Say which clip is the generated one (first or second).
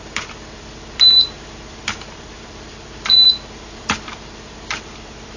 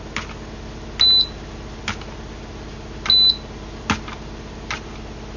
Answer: first